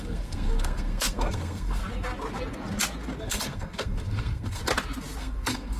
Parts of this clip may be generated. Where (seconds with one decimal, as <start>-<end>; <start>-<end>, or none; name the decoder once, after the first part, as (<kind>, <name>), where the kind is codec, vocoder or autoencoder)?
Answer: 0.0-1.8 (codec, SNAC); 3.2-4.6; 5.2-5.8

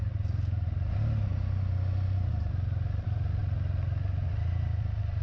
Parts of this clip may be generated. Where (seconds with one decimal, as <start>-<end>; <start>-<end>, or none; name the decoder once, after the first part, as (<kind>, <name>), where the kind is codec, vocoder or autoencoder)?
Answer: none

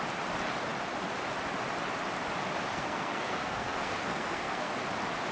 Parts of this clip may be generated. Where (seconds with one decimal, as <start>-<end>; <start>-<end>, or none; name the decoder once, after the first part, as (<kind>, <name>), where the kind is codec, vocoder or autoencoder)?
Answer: 2.7-4.7 (codec, SNAC)